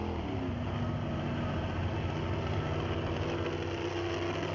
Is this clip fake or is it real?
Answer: real